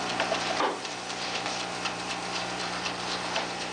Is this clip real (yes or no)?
no